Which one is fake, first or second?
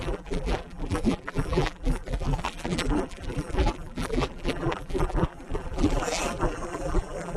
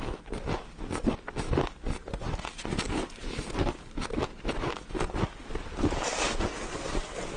first